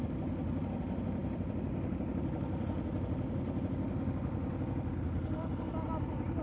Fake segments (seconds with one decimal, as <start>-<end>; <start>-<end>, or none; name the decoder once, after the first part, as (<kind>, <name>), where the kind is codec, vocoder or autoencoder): none